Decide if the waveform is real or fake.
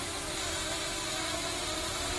real